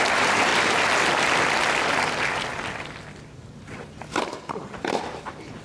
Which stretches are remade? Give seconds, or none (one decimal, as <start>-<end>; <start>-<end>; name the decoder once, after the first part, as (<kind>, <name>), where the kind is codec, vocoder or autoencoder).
0.0-0.5 (vocoder, BigVGAN v2); 3.9-5.6

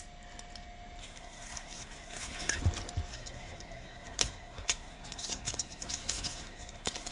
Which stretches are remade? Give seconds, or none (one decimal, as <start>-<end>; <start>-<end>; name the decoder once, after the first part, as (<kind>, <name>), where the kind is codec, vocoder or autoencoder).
1.0-2.6 (codec, SNAC); 3.1-7.1